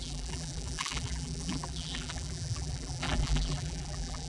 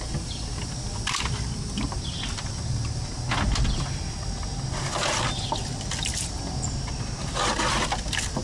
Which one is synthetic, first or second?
first